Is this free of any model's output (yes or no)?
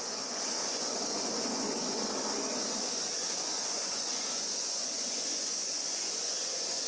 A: no